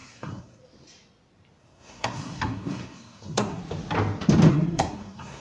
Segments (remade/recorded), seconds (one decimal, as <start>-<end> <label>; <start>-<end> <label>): 0.0-0.6 remade; 0.6-1.6 recorded; 1.6-3.6 remade; 3.6-4.5 recorded; 4.5-5.4 remade